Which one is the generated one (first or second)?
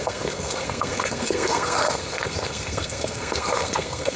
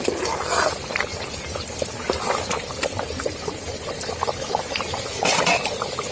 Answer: first